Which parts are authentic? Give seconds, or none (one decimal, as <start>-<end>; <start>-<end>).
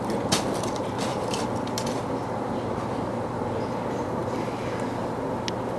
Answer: 0.0-5.8